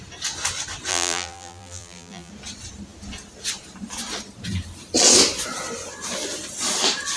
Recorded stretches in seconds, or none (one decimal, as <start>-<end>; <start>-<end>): 0.0-0.9; 2.3-7.2